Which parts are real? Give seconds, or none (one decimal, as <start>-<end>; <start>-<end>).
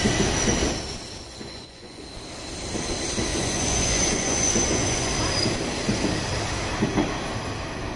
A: 0.0-1.2; 2.0-3.3; 5.1-8.0